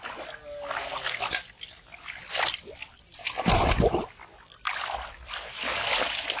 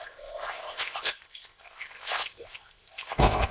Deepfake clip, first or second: second